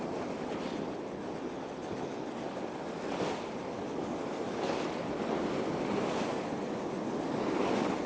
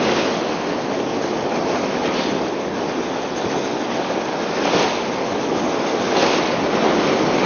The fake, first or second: first